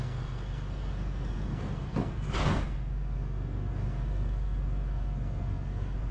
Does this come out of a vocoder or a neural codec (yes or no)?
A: yes